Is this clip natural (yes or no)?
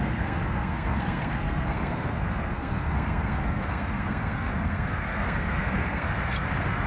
no